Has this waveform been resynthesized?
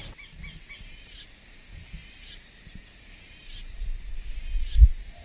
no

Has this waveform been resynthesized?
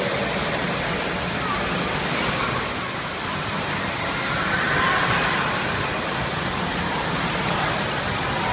no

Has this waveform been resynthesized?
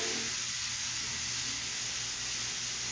no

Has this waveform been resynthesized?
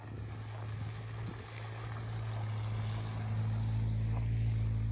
no